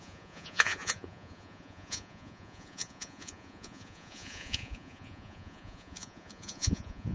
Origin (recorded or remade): remade